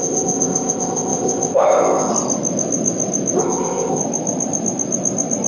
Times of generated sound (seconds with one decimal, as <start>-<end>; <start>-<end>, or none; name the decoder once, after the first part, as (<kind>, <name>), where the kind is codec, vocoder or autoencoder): 0.0-2.1 (codec, ZipCodec); 3.4-4.0